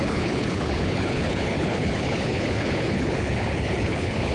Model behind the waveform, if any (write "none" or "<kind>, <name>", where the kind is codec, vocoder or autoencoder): codec, HILCodec